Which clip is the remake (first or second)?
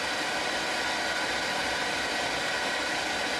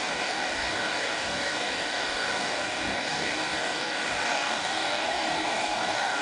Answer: second